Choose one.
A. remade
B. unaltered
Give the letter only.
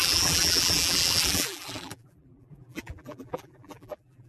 A